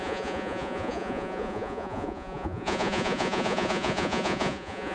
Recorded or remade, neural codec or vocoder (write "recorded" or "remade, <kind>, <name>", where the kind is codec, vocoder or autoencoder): remade, vocoder, Vocos